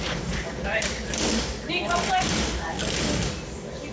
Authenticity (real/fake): real